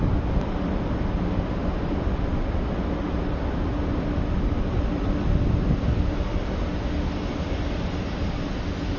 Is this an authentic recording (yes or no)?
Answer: yes